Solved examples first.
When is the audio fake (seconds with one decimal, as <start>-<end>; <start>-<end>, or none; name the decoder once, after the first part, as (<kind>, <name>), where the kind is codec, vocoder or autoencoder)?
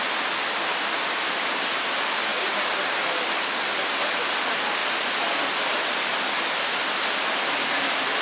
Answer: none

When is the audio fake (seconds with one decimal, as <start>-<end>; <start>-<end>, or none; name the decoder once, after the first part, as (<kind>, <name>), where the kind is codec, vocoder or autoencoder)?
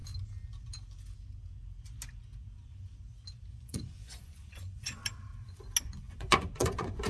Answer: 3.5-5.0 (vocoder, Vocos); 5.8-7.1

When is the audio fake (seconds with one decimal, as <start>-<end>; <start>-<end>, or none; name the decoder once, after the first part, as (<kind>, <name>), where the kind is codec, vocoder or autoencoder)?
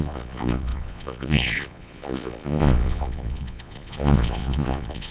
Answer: 0.0-5.1 (vocoder, Vocos)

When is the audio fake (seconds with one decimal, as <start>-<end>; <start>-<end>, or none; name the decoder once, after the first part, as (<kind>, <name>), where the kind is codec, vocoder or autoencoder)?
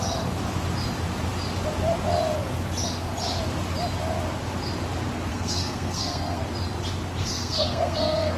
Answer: 5.3-6.4 (codec, SNAC); 7.2-8.4